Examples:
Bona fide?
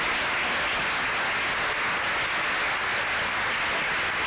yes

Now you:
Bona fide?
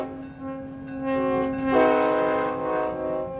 yes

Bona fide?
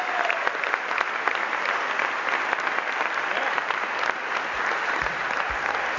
no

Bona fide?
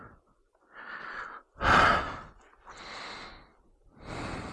yes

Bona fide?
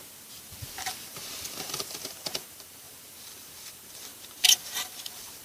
no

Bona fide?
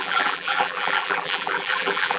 no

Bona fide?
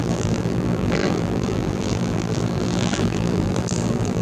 no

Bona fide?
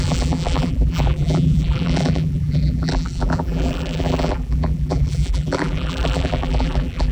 no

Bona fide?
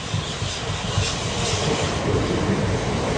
yes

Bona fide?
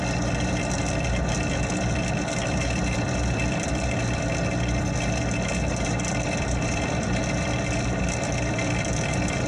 no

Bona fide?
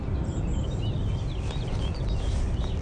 no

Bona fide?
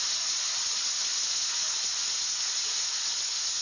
yes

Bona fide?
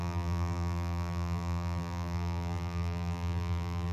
no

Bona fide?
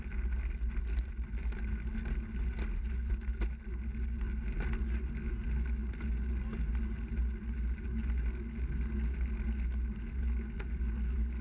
yes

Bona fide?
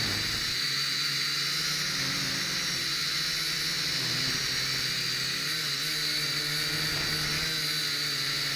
yes